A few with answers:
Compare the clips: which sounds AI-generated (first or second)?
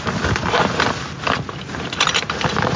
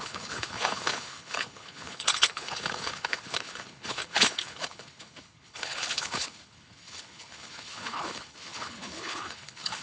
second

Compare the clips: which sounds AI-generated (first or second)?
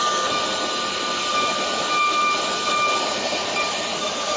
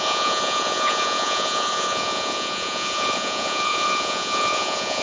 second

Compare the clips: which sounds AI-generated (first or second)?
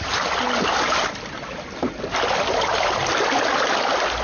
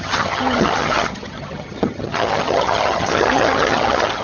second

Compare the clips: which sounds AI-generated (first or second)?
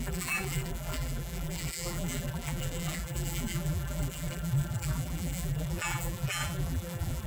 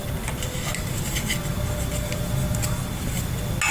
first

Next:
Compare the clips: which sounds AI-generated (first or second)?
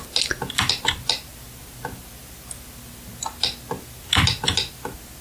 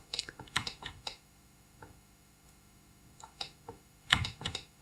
second